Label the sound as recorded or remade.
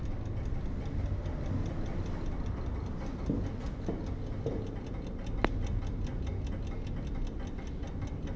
recorded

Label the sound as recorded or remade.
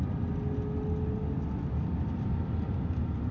recorded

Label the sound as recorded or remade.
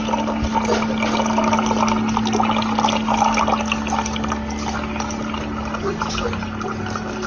recorded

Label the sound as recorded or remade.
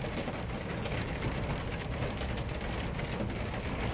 recorded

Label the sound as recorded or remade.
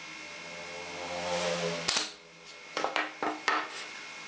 recorded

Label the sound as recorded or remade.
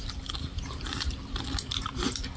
recorded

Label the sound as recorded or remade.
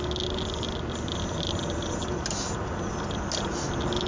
recorded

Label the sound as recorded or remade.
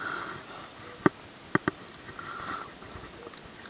recorded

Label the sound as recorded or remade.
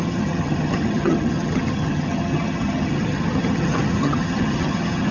remade